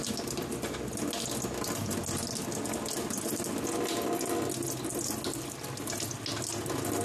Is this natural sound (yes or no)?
yes